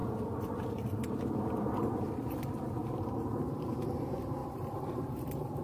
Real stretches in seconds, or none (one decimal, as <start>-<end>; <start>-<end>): 0.0-0.7